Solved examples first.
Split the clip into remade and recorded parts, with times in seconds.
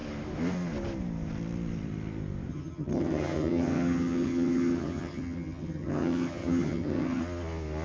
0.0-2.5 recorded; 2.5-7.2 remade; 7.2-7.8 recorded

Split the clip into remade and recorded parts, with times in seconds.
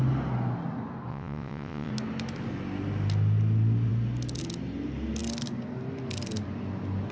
0.0-1.1 recorded; 1.1-1.9 remade; 1.9-7.1 recorded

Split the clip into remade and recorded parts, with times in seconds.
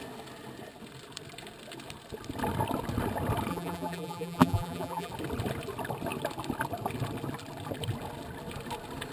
0.0-3.5 recorded; 3.5-5.1 remade; 5.1-9.1 recorded